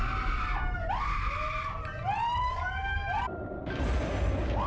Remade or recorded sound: recorded